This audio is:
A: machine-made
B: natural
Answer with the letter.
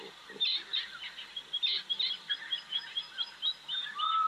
B